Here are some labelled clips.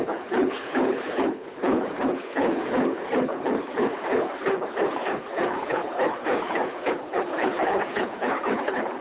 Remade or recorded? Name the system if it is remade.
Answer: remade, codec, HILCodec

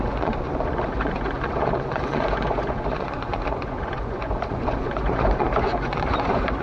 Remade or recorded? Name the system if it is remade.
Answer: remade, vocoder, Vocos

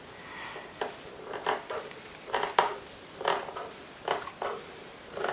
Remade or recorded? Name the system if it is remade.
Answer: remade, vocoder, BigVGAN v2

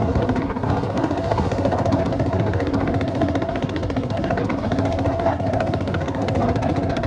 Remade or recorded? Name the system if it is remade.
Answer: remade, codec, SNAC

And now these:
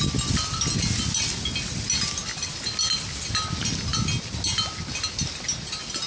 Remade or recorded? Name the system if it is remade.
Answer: recorded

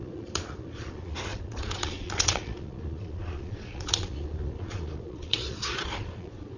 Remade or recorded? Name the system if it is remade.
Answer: remade, vocoder, Vocos